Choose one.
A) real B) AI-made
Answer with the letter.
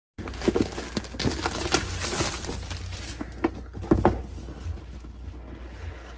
A